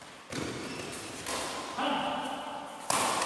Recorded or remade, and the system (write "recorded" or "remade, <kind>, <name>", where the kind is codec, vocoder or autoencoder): recorded